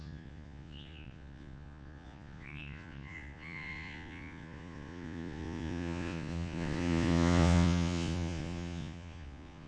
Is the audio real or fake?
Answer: fake